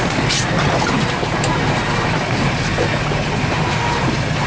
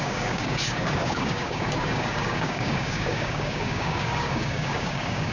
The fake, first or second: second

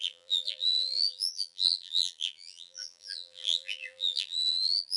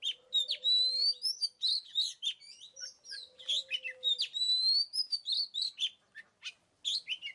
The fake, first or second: first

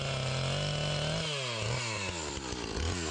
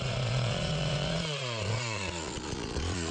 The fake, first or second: second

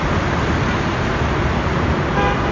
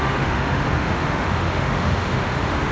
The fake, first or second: second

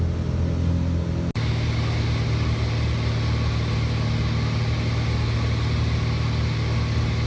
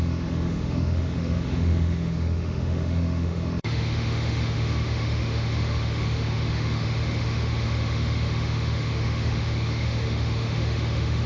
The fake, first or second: second